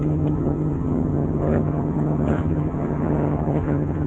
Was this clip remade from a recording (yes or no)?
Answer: yes